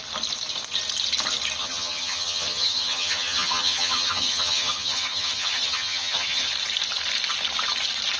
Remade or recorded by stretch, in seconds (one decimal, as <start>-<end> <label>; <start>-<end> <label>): 0.0-1.6 recorded; 1.6-6.5 remade; 6.5-8.2 recorded